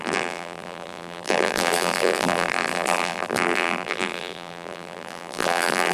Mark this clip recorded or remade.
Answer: remade